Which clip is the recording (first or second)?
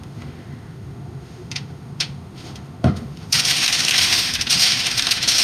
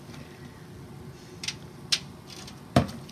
second